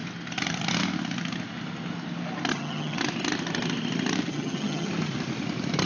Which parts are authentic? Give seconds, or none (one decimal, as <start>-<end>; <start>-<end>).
0.0-2.5; 3.0-4.3; 4.9-5.9